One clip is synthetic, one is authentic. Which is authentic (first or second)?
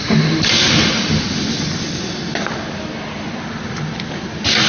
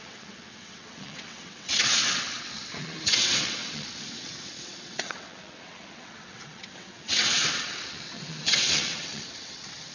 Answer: first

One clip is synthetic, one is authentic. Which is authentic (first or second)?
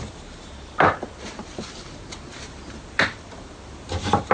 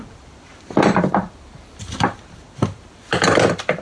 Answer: first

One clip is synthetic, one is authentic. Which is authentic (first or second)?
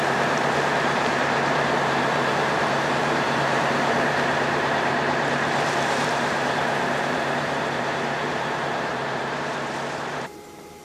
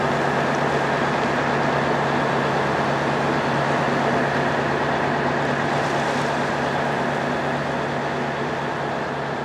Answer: second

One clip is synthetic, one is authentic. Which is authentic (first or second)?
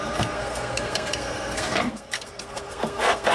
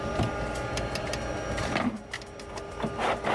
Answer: second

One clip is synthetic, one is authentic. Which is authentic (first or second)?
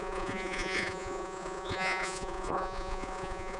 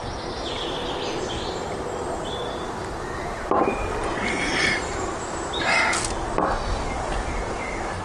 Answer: second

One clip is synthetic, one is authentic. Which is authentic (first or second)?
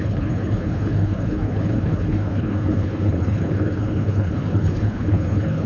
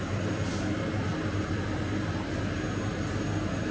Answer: second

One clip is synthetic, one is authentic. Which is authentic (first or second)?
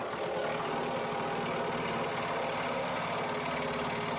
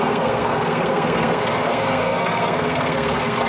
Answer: first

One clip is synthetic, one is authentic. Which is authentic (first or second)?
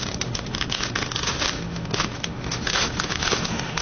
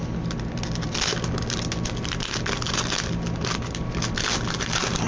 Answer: second